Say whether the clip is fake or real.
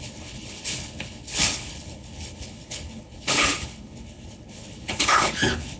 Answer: fake